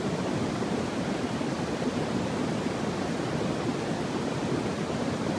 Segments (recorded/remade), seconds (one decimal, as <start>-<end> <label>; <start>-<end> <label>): 0.0-5.4 recorded